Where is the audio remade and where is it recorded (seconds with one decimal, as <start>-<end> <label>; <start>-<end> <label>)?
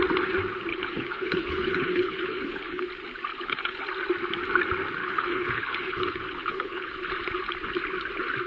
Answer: 0.0-0.7 recorded; 0.7-2.8 remade; 2.8-3.3 recorded; 3.3-3.8 remade; 3.8-5.0 recorded; 5.0-6.9 remade; 6.9-8.5 recorded